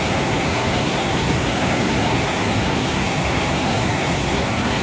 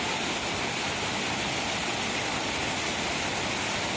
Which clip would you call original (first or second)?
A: second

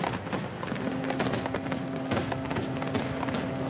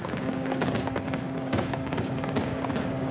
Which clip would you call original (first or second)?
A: first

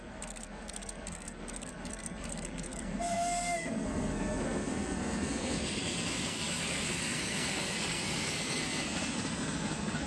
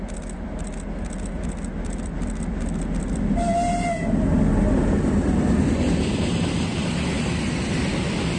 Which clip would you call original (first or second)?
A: second